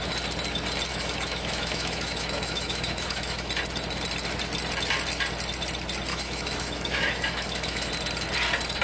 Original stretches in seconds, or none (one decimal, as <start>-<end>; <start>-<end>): 0.0-0.9; 3.5-6.1; 7.9-8.8